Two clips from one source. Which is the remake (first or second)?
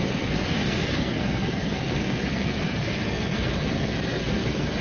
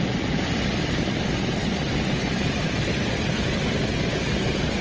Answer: first